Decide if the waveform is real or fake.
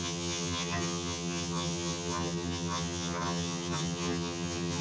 fake